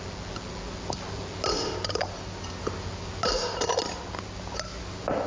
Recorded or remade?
recorded